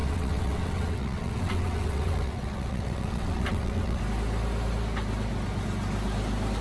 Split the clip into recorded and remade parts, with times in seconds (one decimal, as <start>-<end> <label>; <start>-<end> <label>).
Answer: 0.0-4.0 remade; 4.0-6.6 recorded